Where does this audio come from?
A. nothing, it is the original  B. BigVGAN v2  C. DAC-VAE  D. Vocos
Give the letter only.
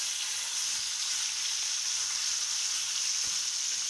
A